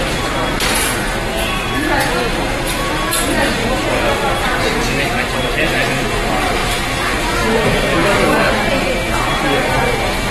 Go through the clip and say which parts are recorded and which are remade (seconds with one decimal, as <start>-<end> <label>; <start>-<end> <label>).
0.0-7.9 recorded; 7.9-8.5 remade; 8.5-10.3 recorded